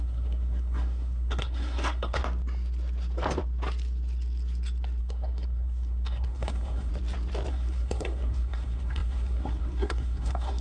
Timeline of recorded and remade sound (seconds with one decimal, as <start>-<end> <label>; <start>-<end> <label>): 0.0-2.2 remade; 2.2-5.0 recorded; 5.0-6.9 remade; 6.9-7.5 recorded; 7.5-10.6 remade

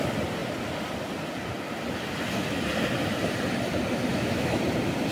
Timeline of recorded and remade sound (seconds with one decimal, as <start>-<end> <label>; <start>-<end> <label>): 0.0-4.1 recorded; 4.1-4.6 remade; 4.6-5.1 recorded

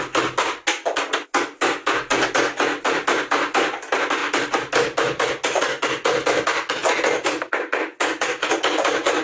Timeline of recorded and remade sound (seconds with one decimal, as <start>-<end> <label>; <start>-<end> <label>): 0.0-9.2 recorded

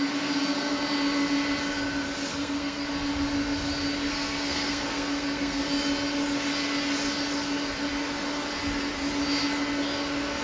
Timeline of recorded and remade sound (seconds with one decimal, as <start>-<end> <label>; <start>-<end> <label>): 0.0-2.3 recorded; 2.3-2.9 remade; 2.9-4.1 recorded; 4.1-5.6 remade; 5.6-10.4 recorded